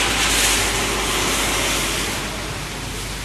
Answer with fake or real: real